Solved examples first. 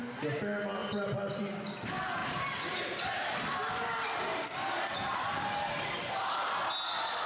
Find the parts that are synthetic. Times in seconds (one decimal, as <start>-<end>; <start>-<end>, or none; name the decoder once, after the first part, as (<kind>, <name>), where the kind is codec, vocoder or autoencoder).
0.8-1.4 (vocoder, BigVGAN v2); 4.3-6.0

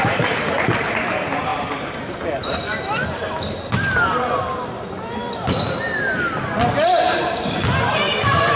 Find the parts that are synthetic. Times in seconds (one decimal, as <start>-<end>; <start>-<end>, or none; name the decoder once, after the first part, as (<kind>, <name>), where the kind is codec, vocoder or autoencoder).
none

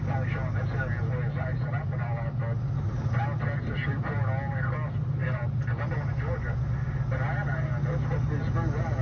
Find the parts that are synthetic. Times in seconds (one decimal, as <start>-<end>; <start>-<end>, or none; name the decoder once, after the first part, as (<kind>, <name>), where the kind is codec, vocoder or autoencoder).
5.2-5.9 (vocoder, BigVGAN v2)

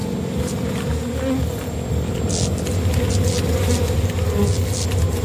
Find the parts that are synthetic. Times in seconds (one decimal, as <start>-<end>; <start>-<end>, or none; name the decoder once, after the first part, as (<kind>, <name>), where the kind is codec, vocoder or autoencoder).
none